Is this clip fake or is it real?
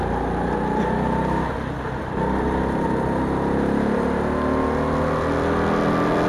real